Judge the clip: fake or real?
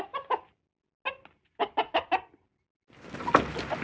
real